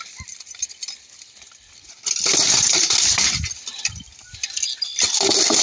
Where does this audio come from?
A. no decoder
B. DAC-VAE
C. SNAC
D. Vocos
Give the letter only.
A